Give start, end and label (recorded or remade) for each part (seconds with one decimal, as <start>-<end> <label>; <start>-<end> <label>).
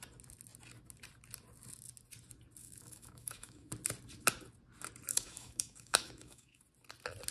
0.0-2.6 recorded; 2.6-3.7 remade; 3.7-5.1 recorded; 5.1-6.6 remade; 6.6-7.3 recorded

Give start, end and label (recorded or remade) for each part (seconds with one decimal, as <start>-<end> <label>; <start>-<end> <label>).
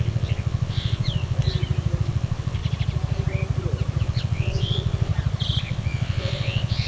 0.0-1.4 remade; 1.4-2.0 recorded; 2.0-2.6 remade; 2.6-4.0 recorded; 4.0-5.1 remade; 5.1-5.6 recorded; 5.6-6.9 remade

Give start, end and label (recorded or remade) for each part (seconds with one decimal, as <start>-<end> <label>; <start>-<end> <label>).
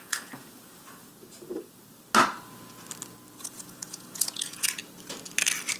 0.0-1.1 remade; 1.1-3.4 recorded; 3.4-4.8 remade; 4.8-5.8 recorded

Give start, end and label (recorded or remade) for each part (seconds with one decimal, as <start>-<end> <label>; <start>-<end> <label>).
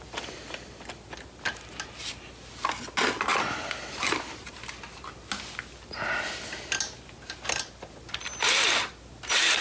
0.0-9.6 recorded